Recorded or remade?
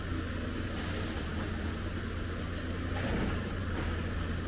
recorded